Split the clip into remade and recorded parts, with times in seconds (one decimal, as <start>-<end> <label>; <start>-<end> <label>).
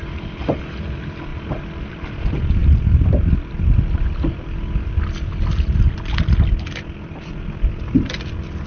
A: 0.0-8.7 recorded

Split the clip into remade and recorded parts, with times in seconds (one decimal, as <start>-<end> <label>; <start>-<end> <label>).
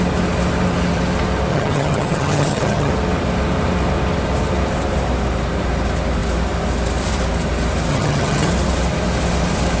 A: 0.0-1.5 recorded; 1.5-2.9 remade; 2.9-7.9 recorded; 7.9-8.5 remade; 8.5-9.8 recorded